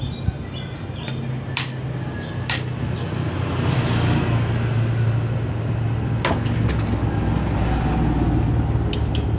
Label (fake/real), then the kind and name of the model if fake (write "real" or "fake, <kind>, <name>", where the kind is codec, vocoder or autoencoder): real